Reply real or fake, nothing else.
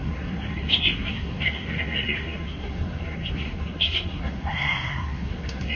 fake